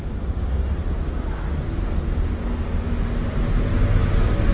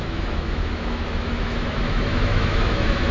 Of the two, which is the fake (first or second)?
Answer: second